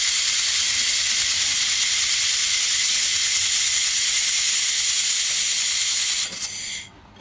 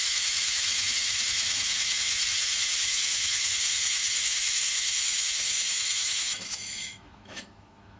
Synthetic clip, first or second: second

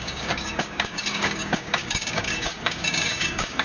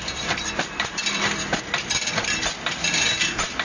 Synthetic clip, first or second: first